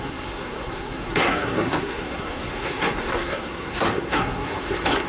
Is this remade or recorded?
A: remade